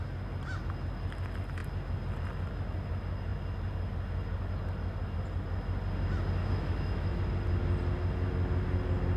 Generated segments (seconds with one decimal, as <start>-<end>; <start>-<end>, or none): 6.4-7.2

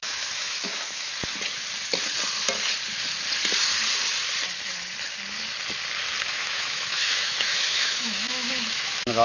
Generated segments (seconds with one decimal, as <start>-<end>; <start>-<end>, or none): 0.0-1.1; 6.3-9.2

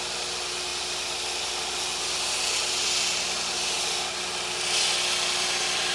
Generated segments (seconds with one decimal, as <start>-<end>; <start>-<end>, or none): none